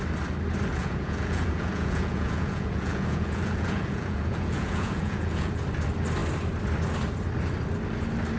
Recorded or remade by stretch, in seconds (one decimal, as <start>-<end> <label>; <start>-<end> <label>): 0.0-0.7 recorded; 0.7-5.6 remade; 5.6-8.4 recorded